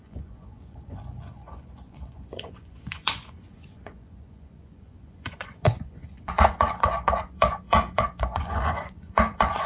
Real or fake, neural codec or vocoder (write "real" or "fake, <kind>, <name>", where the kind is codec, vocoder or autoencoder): fake, vocoder, Vocos